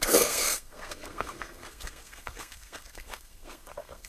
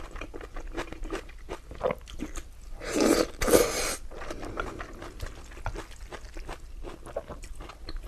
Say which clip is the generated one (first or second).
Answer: first